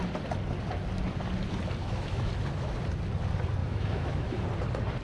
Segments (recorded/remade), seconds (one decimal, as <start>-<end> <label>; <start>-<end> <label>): 0.0-1.8 recorded; 1.8-2.3 remade; 2.3-3.6 recorded; 3.6-4.4 remade; 4.4-5.0 recorded